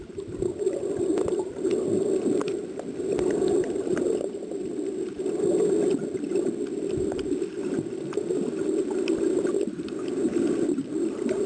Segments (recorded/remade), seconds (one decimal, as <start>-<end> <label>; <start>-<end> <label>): 0.0-11.5 recorded